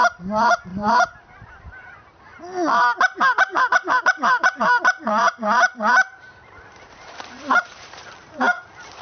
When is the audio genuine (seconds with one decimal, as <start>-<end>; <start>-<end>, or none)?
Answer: 0.0-0.7; 2.1-3.5; 8.4-9.0